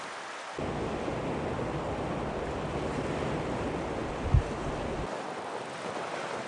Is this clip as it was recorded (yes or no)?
yes